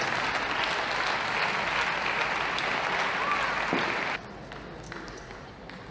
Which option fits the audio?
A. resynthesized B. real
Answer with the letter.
B